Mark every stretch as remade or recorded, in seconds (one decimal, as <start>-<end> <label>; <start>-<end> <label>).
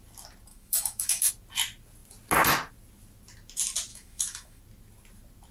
0.0-0.5 recorded; 0.5-1.3 remade; 1.3-3.9 recorded; 3.9-4.6 remade; 4.6-5.5 recorded